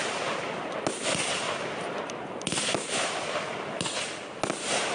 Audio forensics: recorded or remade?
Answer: recorded